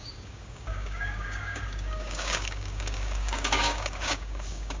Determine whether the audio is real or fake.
fake